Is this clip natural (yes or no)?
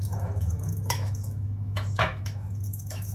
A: no